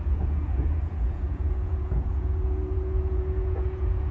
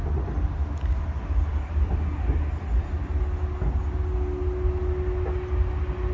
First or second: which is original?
second